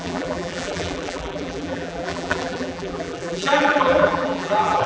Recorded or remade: remade